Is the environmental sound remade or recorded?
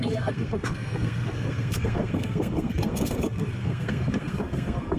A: remade